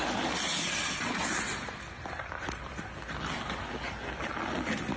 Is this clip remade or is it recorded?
recorded